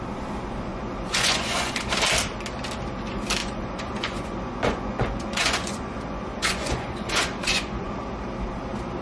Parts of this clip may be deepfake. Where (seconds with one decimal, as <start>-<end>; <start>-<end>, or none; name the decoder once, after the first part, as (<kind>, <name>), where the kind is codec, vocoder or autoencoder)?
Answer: 0.7-1.9 (vocoder, Vocos); 3.4-7.9